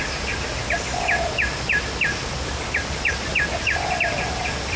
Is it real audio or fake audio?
real